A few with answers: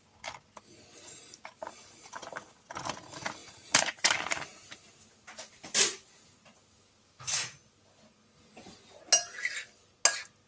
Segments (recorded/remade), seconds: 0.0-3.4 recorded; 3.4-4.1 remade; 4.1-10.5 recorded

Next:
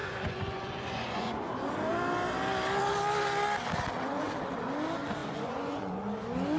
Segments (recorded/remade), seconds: 0.0-1.5 remade; 1.5-5.2 recorded; 5.2-5.9 remade; 5.9-6.6 recorded

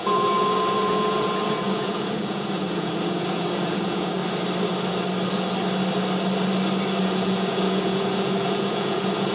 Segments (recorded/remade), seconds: 0.0-4.2 remade; 4.2-7.0 recorded; 7.0-9.3 remade

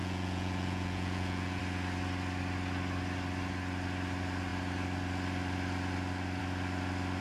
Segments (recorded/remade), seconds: 0.0-1.6 remade; 1.6-7.2 recorded